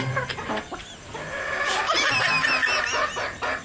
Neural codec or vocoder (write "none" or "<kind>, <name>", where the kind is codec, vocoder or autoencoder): none